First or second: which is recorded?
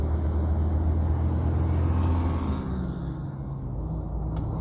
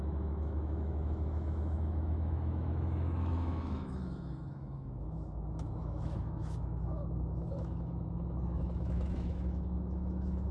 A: first